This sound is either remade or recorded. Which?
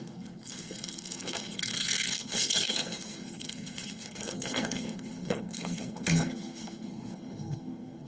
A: remade